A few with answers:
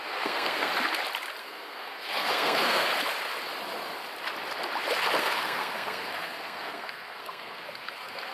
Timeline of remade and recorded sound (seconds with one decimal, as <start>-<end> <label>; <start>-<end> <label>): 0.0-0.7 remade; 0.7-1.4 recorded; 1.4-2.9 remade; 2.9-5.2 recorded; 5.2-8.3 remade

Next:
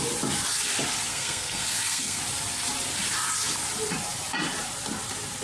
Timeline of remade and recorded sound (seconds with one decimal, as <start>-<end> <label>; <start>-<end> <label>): 0.0-1.1 recorded; 1.1-2.2 remade; 2.2-5.4 recorded

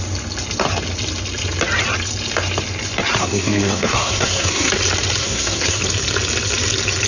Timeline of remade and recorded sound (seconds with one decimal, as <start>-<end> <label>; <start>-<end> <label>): 0.0-3.2 recorded; 3.2-4.7 remade; 4.7-5.2 recorded; 5.2-5.8 remade; 5.8-7.1 recorded

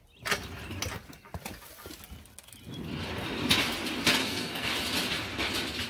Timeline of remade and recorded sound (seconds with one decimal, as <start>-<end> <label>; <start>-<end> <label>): 0.0-4.2 recorded; 4.2-4.7 remade; 4.7-5.9 recorded

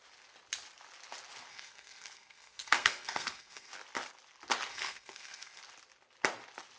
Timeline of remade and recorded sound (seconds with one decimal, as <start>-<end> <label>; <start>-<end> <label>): 0.0-1.5 recorded; 1.5-3.7 remade; 3.7-4.7 recorded; 4.7-5.6 remade; 5.6-6.8 recorded

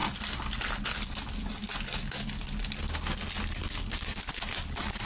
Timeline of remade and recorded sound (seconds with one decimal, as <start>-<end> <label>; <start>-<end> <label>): 0.0-5.1 recorded

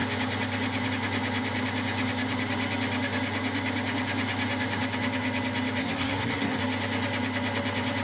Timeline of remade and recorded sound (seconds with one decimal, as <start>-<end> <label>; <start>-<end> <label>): 0.0-5.8 recorded; 5.8-6.6 remade; 6.6-8.0 recorded